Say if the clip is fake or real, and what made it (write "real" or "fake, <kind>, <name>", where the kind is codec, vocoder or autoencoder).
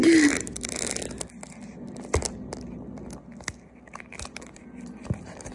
real